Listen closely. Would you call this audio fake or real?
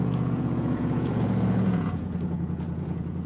fake